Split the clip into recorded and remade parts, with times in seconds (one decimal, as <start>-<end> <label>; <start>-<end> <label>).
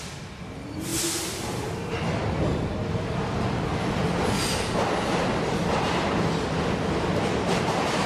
0.0-8.1 recorded